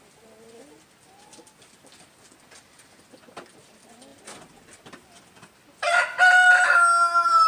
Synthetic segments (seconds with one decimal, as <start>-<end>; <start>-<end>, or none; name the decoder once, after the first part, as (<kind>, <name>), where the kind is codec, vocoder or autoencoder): none